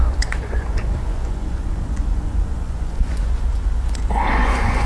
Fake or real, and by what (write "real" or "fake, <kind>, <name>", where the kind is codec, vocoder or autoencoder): fake, vocoder, Vocos